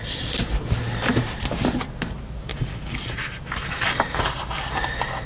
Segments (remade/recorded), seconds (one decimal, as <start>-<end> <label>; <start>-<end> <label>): 0.0-5.3 recorded